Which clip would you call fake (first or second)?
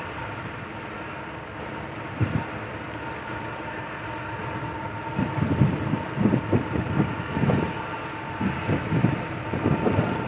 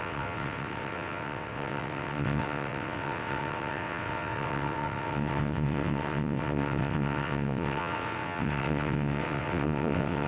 second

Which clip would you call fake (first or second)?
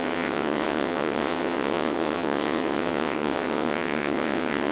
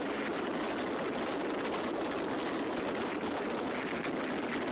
first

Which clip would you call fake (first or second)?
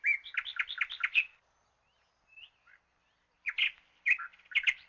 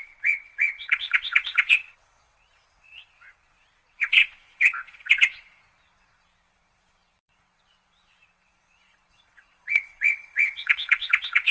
second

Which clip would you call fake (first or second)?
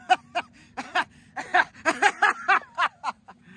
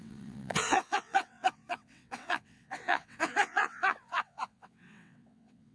second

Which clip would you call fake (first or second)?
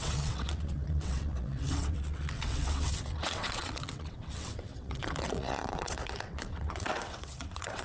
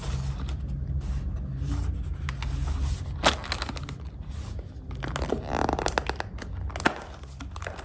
first